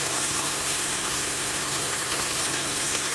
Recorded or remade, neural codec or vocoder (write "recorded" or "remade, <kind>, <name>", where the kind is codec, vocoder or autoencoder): remade, codec, SNAC